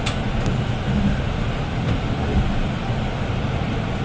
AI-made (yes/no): no